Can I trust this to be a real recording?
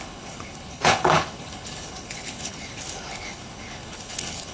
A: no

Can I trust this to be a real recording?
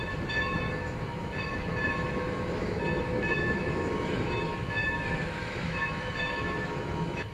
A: no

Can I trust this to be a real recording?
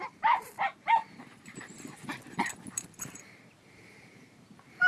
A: no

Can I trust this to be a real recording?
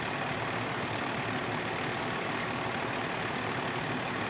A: yes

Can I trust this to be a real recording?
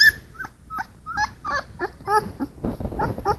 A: yes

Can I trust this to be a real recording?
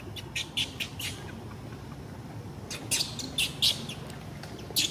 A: yes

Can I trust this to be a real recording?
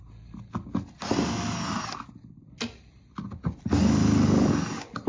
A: yes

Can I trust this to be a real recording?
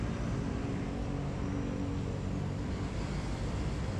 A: yes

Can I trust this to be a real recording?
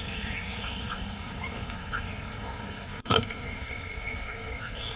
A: no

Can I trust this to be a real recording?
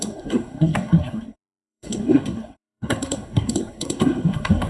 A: no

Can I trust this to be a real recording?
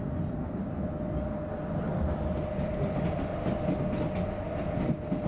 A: yes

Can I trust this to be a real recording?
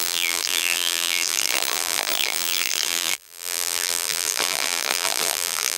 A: no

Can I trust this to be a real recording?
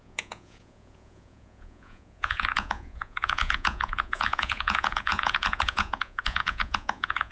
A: no